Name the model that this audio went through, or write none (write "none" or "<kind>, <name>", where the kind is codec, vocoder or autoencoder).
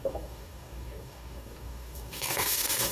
codec, DAC